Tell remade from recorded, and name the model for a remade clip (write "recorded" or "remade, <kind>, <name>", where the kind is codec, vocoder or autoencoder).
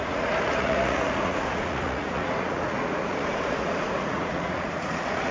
remade, vocoder, Vocos